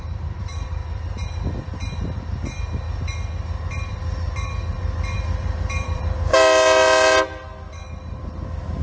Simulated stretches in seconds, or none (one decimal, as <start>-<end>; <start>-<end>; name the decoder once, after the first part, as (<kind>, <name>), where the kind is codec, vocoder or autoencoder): 0.0-0.8 (vocoder, BigVGAN v2); 3.7-6.3

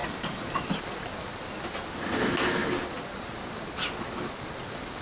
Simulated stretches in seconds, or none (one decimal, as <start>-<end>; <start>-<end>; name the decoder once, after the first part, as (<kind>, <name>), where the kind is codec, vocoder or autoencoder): 0.0-0.7 (vocoder, BigVGAN v2)